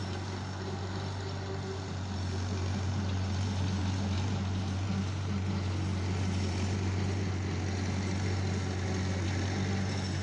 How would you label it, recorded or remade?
recorded